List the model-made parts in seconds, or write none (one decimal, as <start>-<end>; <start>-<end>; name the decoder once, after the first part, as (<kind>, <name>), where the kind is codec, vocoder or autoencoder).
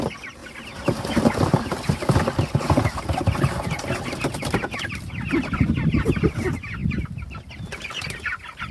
none